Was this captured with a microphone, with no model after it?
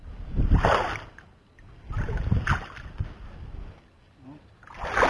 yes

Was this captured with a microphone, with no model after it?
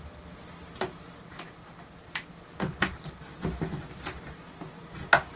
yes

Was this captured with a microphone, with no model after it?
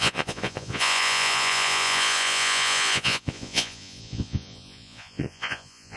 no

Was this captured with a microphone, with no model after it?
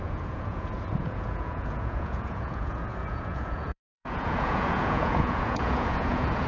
no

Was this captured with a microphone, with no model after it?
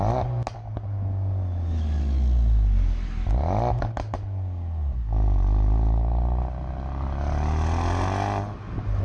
yes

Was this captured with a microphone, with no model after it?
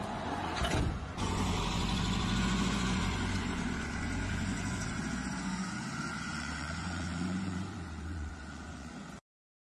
no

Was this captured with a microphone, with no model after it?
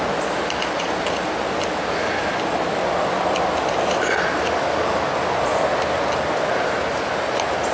yes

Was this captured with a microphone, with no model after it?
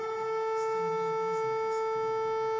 yes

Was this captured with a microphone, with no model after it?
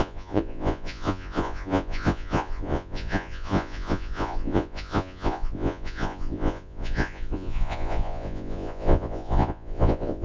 no